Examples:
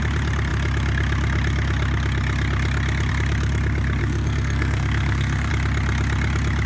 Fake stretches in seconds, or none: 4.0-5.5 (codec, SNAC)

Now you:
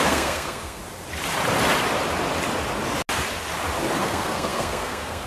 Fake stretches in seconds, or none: 0.0-0.8 (codec, SNAC); 4.0-5.3

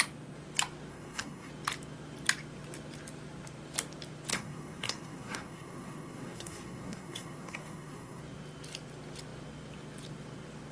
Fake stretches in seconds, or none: 0.9-1.5 (codec, SNAC); 4.3-8.2